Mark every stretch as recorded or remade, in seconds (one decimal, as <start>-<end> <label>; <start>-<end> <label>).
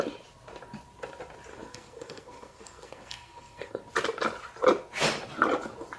0.0-1.5 recorded; 1.5-3.8 remade; 3.8-6.0 recorded